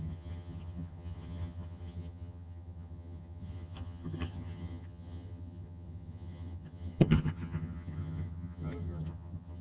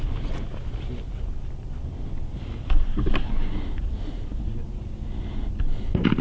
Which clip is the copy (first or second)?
first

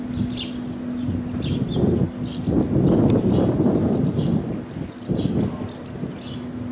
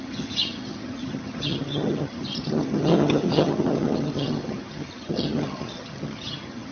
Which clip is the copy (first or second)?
second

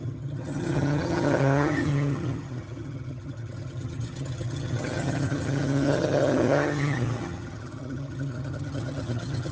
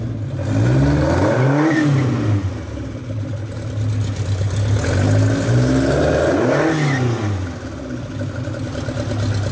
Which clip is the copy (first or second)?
first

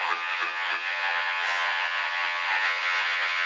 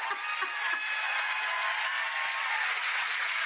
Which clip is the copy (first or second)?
first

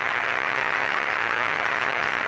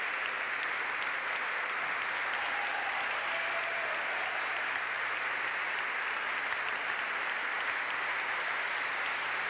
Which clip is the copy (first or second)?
first